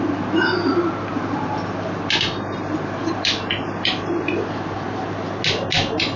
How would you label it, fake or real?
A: real